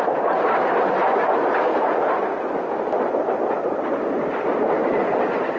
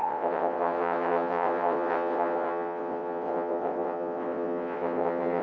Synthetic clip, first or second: second